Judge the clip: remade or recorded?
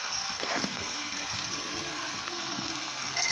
remade